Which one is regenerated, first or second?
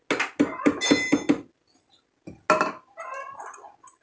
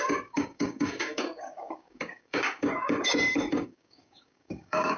second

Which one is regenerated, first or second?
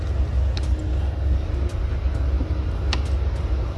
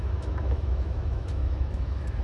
second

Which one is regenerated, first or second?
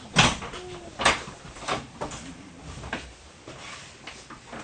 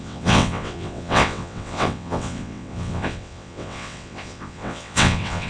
second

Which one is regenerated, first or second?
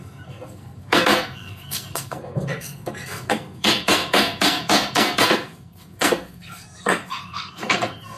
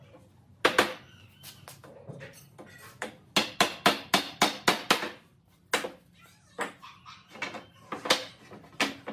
first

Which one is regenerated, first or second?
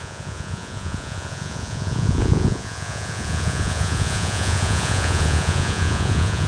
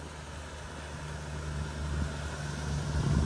first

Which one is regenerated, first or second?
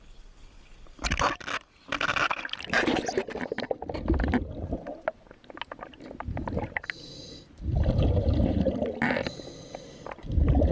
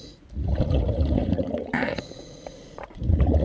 second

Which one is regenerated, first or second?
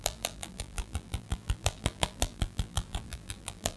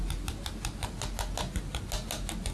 first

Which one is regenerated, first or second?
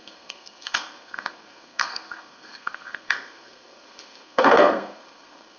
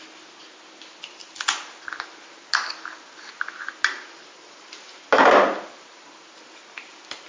first